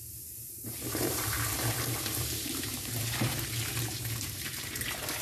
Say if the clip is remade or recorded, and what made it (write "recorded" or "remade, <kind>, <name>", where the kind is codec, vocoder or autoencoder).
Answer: remade, vocoder, BigVGAN v2